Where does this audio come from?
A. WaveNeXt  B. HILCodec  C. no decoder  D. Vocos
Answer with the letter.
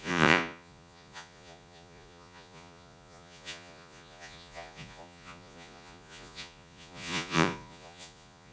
D